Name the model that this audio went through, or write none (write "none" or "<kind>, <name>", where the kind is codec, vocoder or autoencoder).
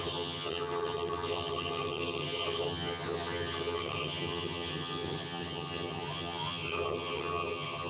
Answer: vocoder, HiFi-GAN